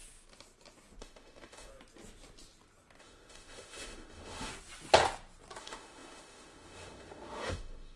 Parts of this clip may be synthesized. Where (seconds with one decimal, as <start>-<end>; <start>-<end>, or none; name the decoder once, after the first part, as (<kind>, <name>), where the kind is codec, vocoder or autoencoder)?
1.0-1.7 (autoencoder, DAC-VAE); 3.0-4.5; 5.6-8.0